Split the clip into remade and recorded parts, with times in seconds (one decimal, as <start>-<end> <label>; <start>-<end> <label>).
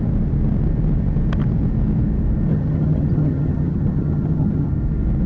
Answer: 0.0-2.5 recorded; 2.5-4.7 remade; 4.7-5.3 recorded